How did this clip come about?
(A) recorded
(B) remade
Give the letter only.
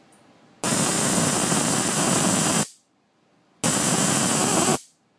A